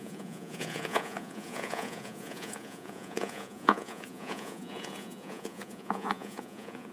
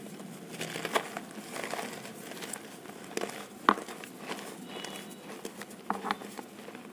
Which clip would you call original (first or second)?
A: second